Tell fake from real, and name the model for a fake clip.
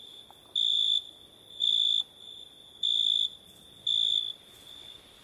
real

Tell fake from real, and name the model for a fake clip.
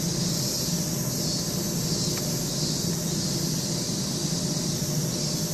real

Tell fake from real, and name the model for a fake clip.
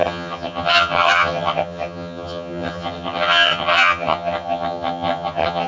fake, vocoder, HiFi-GAN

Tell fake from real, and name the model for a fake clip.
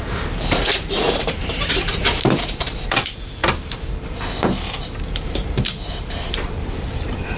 fake, vocoder, BigVGAN v2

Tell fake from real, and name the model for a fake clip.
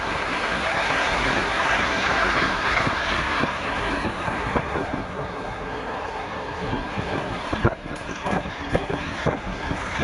fake, codec, SNAC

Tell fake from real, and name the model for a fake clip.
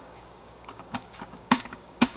fake, codec, DAC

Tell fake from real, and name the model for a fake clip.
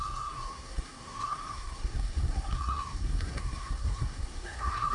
fake, codec, SNAC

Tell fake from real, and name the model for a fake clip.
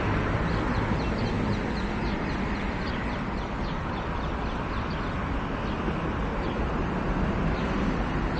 real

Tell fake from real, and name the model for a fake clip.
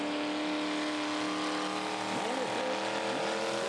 real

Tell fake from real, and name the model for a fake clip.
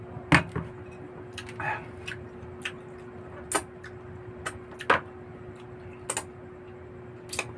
real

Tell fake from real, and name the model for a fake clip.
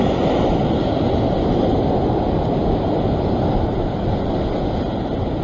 real